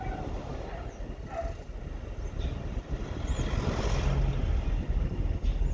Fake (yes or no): no